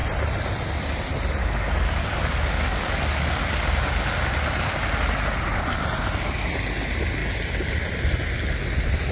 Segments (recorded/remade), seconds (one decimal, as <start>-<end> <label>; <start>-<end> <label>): 0.0-1.4 recorded; 1.4-3.4 remade; 3.4-9.1 recorded